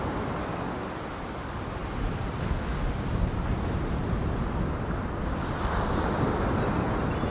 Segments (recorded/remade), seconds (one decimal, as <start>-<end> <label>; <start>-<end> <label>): 0.0-7.3 recorded